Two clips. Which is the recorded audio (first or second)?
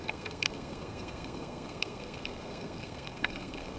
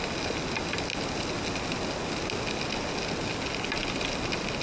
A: second